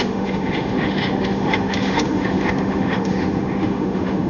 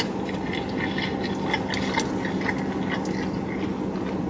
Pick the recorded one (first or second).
second